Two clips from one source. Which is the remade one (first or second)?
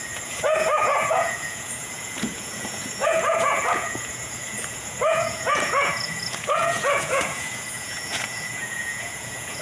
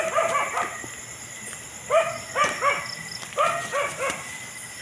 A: first